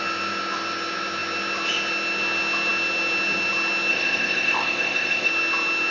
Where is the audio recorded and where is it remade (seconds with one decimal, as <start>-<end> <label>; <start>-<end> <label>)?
0.0-3.9 recorded; 3.9-5.3 remade; 5.3-5.9 recorded